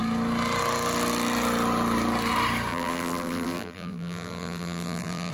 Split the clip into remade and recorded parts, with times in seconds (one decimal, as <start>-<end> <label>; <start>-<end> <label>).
0.0-2.7 recorded; 2.7-5.3 remade